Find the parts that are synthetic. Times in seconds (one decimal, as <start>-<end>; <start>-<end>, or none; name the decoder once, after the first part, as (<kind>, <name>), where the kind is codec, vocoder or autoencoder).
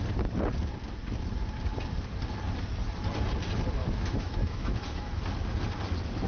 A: 3.8-5.2 (autoencoder, DAC-VAE)